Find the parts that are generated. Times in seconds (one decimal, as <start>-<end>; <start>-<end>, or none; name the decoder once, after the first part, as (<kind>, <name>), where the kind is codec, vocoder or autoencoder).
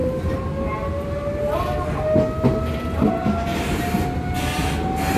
none